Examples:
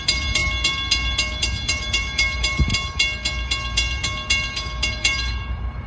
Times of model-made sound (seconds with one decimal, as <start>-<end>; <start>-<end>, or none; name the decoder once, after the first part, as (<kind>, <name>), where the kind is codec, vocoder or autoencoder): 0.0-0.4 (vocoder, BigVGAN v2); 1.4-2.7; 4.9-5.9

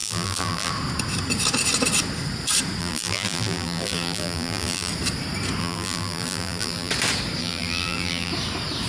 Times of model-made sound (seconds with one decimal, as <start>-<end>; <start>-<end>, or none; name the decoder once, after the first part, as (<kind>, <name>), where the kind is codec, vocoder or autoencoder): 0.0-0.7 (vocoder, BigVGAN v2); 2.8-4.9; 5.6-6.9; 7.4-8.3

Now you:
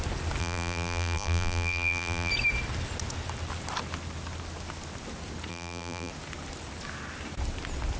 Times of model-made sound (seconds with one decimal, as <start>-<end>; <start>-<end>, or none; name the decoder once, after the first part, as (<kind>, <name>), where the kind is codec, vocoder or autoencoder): 0.4-2.3 (vocoder, BigVGAN v2); 5.5-6.1

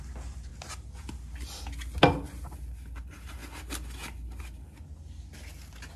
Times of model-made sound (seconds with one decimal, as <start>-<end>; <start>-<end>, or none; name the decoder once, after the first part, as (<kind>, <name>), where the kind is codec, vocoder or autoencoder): none

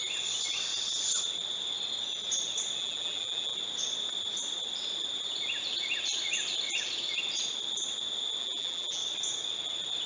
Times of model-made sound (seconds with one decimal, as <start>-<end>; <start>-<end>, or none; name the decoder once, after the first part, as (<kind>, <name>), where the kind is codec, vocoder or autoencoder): 2.8-3.5 (vocoder, BigVGAN v2); 8.4-9.0